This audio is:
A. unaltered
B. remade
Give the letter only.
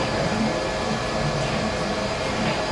A